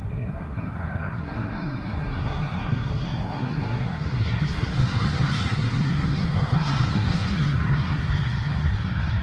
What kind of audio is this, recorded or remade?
remade